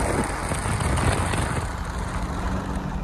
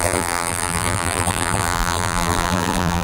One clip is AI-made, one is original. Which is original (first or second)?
first